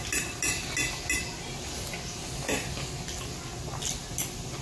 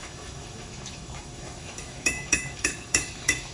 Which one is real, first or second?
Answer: first